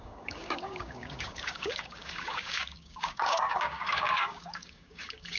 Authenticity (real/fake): fake